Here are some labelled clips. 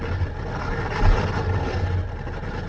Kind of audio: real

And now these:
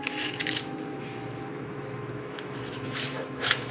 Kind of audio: fake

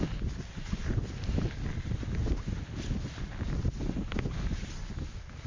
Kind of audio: real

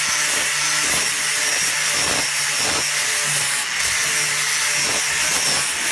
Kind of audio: real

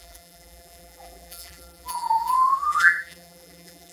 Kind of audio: fake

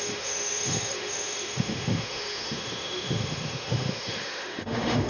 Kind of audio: fake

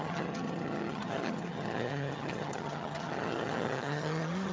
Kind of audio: fake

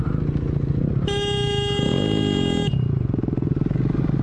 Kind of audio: real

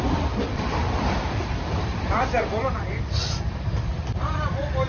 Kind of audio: fake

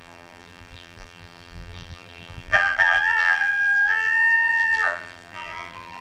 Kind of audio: fake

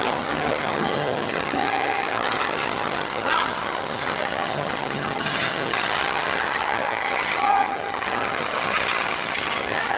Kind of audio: fake